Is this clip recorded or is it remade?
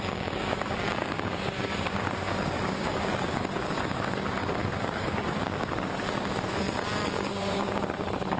remade